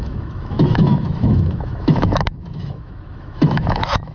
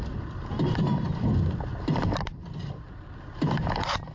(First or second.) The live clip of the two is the second